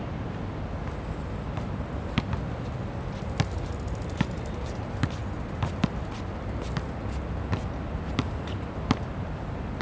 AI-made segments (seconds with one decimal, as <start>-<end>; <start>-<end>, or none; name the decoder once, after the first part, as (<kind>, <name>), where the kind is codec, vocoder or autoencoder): none